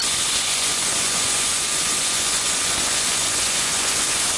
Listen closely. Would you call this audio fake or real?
fake